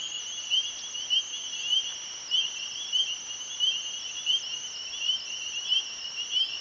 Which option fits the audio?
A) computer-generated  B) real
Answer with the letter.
B